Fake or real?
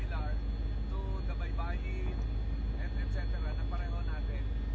real